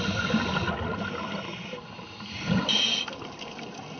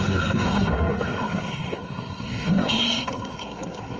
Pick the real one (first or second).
first